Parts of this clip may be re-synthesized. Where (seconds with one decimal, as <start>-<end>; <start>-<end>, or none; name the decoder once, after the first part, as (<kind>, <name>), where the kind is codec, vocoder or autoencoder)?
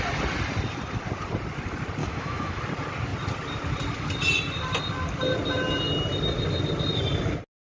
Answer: 2.0-2.6 (autoencoder, DAC-VAE)